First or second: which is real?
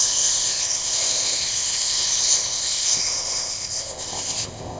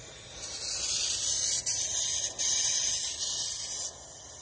second